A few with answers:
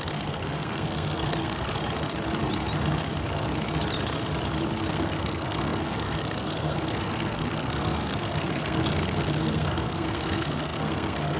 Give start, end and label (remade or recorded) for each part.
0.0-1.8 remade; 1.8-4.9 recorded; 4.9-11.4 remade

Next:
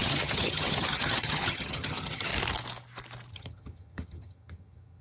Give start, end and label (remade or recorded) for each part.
0.0-2.3 remade; 2.3-3.3 recorded; 3.3-5.0 remade